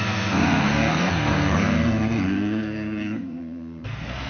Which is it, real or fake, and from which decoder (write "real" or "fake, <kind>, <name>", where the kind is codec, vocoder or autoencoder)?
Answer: fake, codec, SNAC